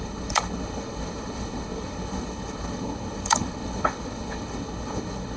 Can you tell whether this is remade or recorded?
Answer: remade